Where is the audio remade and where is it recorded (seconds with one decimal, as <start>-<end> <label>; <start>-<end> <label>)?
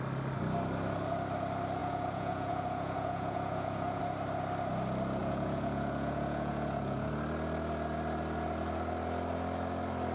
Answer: 0.0-1.8 recorded; 1.8-4.0 remade; 4.0-5.2 recorded; 5.2-7.1 remade; 7.1-10.1 recorded